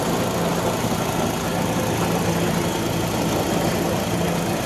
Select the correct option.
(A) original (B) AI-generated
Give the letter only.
A